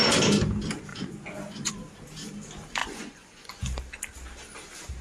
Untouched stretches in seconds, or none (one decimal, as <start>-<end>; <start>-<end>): 0.0-0.9; 1.7-2.8; 3.5-5.0